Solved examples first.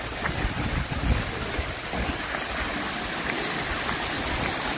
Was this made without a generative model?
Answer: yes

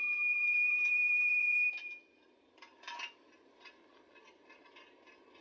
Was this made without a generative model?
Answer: no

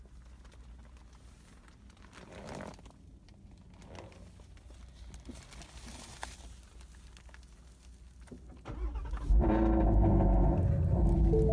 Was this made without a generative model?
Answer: yes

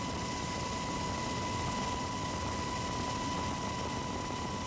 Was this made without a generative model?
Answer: yes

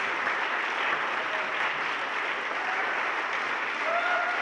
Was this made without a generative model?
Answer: yes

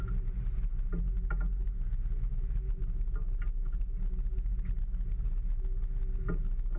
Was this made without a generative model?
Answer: yes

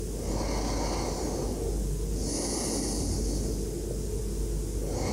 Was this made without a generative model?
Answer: yes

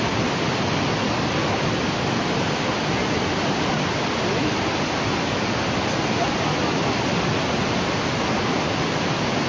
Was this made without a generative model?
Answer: yes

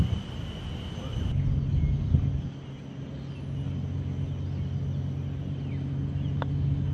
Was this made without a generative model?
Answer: yes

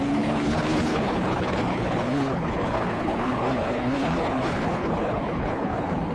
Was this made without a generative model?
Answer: no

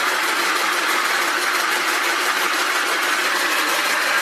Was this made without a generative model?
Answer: yes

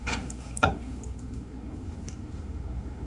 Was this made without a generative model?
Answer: no